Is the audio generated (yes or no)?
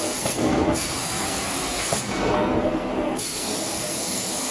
yes